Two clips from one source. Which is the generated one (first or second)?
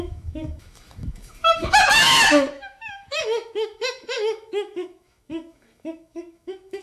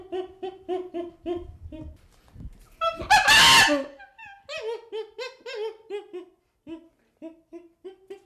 first